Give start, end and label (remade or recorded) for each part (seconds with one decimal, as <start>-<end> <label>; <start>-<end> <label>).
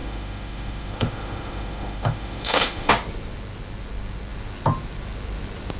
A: 0.0-2.9 remade; 2.9-5.8 recorded